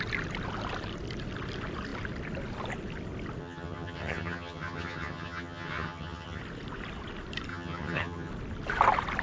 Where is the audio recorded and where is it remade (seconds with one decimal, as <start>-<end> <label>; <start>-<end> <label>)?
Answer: 0.0-3.4 recorded; 3.4-6.4 remade; 6.4-7.5 recorded; 7.5-8.3 remade; 8.3-9.2 recorded